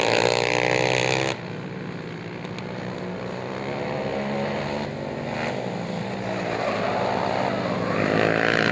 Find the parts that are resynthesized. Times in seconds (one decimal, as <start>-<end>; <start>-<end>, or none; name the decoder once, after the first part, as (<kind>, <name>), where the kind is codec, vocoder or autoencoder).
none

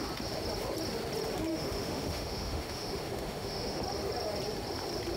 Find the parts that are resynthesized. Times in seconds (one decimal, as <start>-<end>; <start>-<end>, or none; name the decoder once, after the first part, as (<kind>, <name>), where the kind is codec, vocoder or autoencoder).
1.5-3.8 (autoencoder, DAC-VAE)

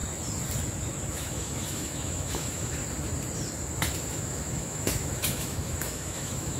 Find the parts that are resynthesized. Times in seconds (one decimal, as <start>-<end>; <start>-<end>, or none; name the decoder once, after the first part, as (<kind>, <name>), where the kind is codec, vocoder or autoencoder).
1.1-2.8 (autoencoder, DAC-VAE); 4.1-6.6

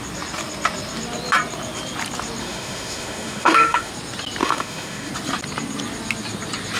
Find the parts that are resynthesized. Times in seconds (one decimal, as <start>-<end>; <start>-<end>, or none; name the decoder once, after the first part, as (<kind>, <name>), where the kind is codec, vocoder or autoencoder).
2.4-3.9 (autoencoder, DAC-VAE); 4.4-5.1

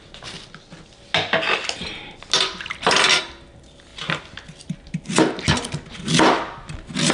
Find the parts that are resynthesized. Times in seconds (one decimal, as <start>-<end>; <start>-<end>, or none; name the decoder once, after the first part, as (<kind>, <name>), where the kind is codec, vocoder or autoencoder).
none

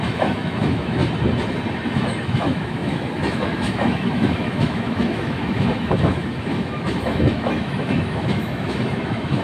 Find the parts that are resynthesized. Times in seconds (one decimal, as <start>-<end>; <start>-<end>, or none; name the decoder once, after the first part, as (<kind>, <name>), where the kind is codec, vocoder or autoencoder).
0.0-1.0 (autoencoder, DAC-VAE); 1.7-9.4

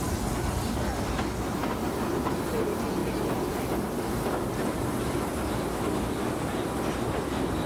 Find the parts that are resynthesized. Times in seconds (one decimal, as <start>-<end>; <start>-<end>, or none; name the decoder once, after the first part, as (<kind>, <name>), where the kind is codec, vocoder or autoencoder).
none

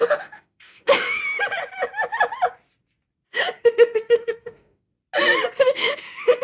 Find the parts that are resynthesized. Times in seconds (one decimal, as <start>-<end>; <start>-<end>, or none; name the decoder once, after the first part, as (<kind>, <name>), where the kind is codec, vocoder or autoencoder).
0.0-1.2 (autoencoder, DAC-VAE); 3.3-4.9; 5.6-6.4